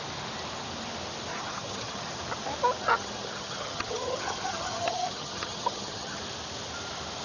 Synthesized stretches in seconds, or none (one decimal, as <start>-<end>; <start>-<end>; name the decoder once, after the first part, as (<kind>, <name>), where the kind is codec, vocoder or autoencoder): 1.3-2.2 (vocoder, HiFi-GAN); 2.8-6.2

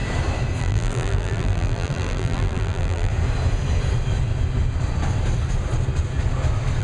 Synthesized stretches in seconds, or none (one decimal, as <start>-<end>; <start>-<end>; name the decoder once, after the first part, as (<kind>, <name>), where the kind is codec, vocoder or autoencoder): 0.6-3.1 (vocoder, BigVGAN v2)

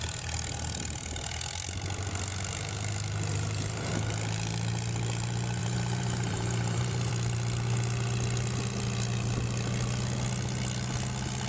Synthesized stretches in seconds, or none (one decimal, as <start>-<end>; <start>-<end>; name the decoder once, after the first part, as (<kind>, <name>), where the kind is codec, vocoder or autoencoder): 3.3-3.9 (vocoder, BigVGAN v2); 5.6-7.1

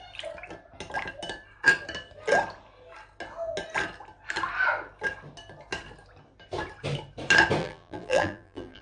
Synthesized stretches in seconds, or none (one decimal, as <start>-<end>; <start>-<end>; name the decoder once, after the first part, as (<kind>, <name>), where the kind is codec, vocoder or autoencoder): 7.6-8.8 (vocoder, BigVGAN v2)

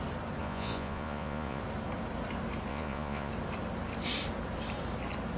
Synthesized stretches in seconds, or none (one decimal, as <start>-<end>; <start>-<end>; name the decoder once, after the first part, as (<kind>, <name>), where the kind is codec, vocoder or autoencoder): 0.4-1.6 (vocoder, Vocos); 2.7-3.3

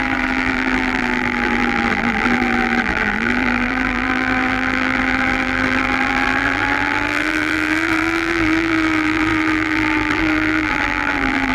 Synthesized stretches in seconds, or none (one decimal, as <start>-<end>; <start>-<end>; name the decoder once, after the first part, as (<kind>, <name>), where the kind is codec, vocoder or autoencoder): 0.0-11.5 (vocoder, BigVGAN v2)

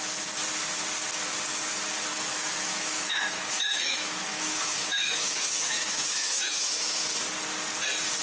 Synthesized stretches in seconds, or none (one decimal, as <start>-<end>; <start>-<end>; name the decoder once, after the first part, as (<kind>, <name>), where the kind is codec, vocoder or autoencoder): 2.1-7.0 (autoencoder, DAC-VAE)

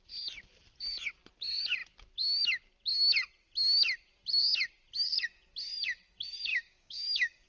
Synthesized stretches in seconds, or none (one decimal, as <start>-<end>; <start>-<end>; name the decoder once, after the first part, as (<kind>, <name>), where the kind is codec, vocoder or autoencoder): 6.5-7.5 (codec, DAC)